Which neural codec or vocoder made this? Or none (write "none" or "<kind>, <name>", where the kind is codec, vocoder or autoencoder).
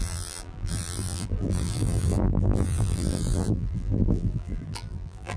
vocoder, BigVGAN v2